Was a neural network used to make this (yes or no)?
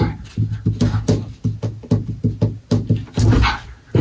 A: no